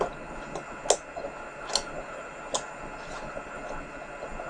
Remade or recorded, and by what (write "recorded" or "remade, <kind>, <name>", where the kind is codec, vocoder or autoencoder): recorded